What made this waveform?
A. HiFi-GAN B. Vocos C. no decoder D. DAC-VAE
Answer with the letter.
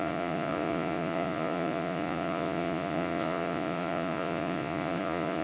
B